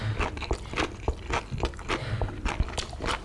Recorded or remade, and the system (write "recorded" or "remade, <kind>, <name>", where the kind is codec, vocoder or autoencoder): recorded